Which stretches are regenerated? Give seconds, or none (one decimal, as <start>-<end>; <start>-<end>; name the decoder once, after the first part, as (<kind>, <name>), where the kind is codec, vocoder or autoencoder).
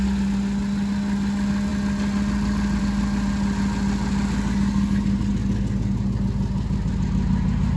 none